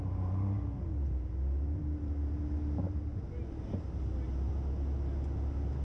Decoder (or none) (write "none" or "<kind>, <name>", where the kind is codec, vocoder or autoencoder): none